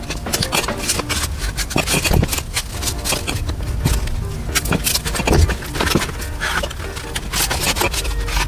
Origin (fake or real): real